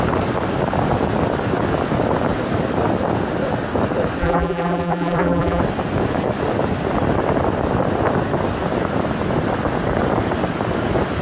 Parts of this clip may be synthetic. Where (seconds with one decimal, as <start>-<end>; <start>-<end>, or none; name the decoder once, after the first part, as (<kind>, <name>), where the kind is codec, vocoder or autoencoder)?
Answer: 4.2-5.6 (vocoder, BigVGAN v2)